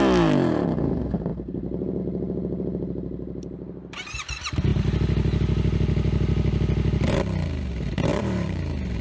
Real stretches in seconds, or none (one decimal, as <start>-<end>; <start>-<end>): 0.0-8.1